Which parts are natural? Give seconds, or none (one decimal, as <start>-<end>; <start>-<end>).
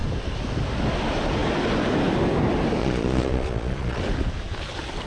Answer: 0.0-2.8; 4.0-5.1